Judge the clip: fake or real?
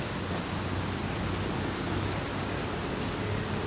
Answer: real